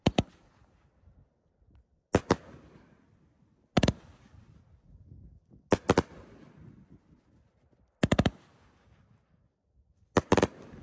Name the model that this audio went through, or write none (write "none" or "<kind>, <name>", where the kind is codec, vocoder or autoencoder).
none